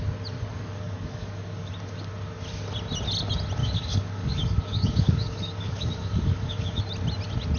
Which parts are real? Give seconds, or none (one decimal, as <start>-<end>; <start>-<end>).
0.0-0.5; 1.7-3.6; 6.8-7.6